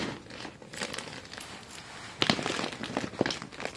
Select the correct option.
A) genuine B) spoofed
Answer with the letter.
A